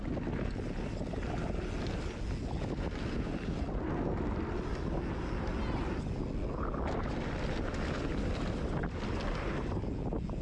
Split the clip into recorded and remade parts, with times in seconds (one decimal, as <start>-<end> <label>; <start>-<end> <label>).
0.0-10.4 recorded

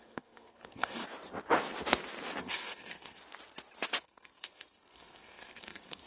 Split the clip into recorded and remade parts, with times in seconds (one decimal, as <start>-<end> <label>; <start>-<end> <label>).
0.0-1.0 remade; 1.0-2.4 recorded; 2.4-3.2 remade; 3.2-4.0 recorded; 4.0-6.1 remade